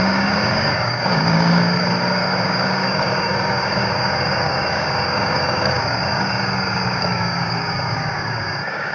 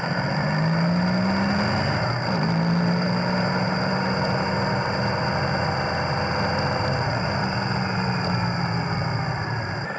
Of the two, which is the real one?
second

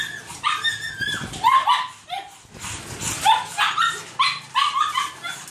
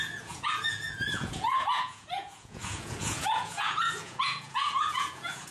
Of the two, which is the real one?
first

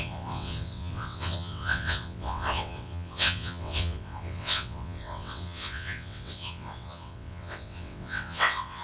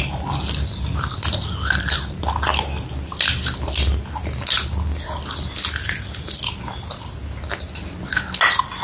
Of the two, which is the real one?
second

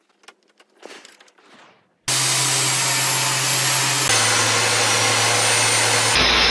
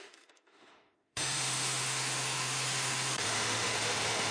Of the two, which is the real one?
first